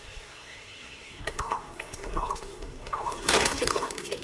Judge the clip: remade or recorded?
remade